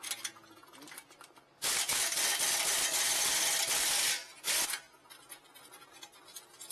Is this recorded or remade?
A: recorded